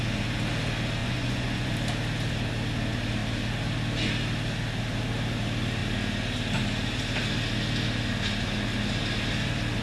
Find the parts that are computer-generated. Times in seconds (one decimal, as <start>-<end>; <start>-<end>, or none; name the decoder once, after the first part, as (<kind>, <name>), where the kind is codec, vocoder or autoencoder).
1.0-1.7 (vocoder, Vocos)